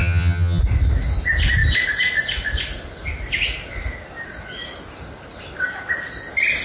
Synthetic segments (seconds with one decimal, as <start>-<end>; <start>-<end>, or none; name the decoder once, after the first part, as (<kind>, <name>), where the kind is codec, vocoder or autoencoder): 0.0-0.6 (vocoder, HiFi-GAN)